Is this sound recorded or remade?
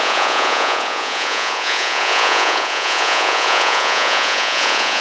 remade